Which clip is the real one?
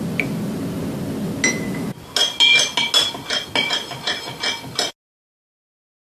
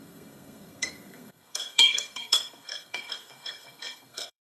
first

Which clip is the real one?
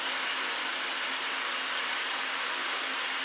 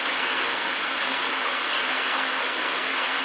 first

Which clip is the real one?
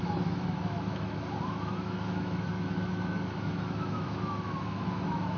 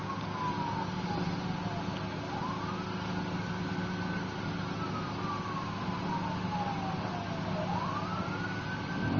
second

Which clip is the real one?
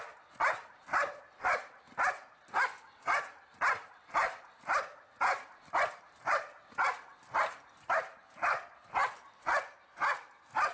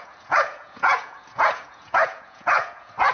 first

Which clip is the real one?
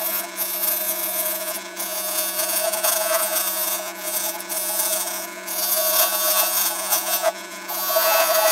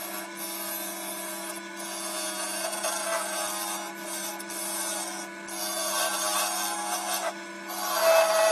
second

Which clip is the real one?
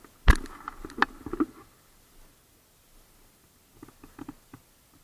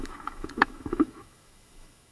first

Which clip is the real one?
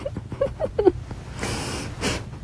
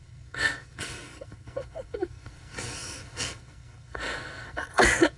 first